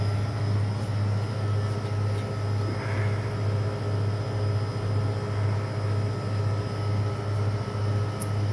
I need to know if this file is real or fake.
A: real